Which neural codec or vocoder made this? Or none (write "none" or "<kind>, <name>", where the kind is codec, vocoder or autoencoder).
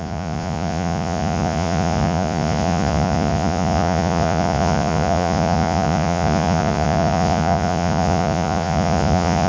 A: vocoder, Vocos